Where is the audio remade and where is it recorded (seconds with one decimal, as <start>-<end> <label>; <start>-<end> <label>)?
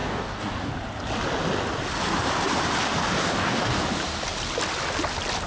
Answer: 0.0-0.7 remade; 0.7-3.2 recorded; 3.2-3.8 remade; 3.8-5.5 recorded